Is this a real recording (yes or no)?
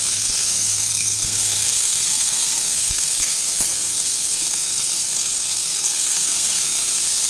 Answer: no